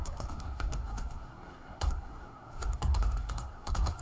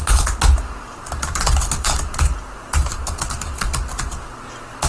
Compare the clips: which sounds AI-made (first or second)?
first